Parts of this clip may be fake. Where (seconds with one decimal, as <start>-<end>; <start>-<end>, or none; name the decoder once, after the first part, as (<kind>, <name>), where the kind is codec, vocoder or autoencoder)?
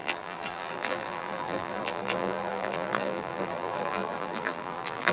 0.0-5.1 (vocoder, BigVGAN v2)